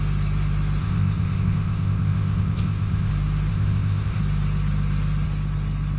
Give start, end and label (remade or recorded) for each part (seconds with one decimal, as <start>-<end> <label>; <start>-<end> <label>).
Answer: 0.0-0.8 recorded; 0.8-3.1 remade; 3.1-3.5 recorded; 3.5-4.2 remade; 4.2-6.0 recorded